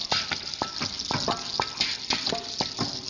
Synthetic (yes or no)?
no